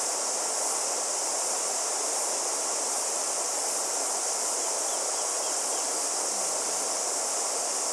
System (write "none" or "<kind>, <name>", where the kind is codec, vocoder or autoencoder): none